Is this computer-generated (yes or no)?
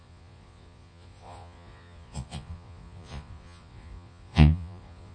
yes